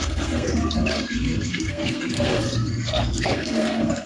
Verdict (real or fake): fake